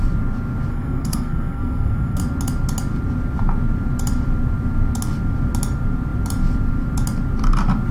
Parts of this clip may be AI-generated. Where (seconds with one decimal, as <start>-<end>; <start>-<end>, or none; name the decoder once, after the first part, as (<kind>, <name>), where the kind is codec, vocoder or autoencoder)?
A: 0.7-2.2 (codec, SNAC)

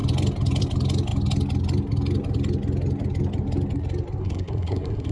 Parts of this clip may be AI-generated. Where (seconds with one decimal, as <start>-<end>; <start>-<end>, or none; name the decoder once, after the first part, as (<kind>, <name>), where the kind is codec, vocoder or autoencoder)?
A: 4.2-5.1 (codec, SNAC)

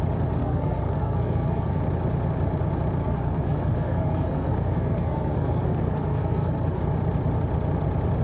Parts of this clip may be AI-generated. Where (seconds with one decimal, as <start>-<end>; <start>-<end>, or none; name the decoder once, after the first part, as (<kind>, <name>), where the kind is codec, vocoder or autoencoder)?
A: 0.4-1.8 (codec, SNAC); 3.0-6.8

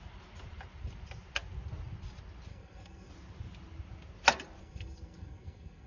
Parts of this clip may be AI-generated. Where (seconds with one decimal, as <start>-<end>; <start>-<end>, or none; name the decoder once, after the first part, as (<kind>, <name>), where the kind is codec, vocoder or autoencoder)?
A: 2.5-3.1 (codec, SNAC); 4.6-5.9

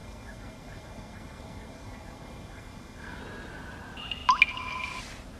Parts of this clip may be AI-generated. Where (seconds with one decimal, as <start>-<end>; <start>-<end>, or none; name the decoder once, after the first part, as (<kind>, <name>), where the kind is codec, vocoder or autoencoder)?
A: 0.0-3.2 (codec, SNAC)

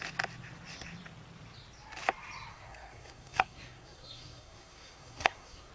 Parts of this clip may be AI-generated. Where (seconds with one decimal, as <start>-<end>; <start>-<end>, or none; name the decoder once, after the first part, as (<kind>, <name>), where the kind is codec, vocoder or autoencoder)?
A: 2.5-5.7 (codec, SNAC)